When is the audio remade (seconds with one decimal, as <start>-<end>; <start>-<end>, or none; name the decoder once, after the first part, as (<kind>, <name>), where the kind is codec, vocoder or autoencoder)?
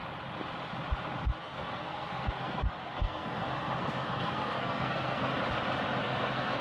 1.4-5.3 (codec, SNAC); 6.0-6.6